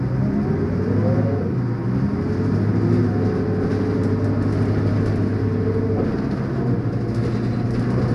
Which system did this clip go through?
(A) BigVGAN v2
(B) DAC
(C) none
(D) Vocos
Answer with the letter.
C